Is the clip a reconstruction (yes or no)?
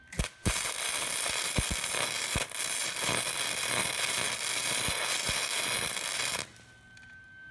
no